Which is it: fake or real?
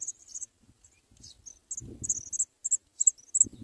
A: real